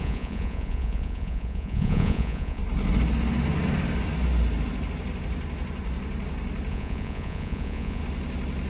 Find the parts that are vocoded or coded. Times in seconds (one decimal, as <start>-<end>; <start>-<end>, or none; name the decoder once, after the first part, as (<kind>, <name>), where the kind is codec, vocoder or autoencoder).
0.0-2.6 (vocoder, Vocos); 6.7-8.0